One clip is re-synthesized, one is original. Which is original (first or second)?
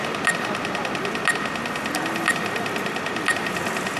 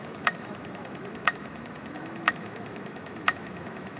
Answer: first